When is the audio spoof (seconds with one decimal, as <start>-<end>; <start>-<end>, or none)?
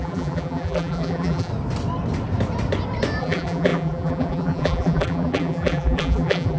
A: 0.0-1.5; 3.2-6.6